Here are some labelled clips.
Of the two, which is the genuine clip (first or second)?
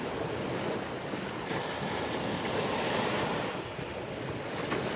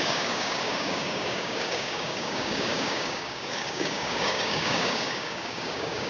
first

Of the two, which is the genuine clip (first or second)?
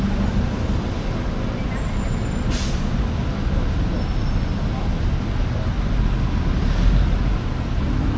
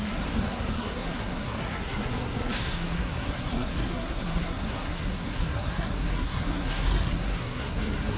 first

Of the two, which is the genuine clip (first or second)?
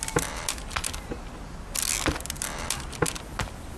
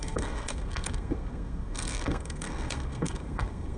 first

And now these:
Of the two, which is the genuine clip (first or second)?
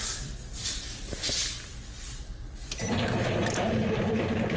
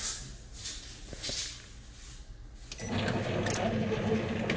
second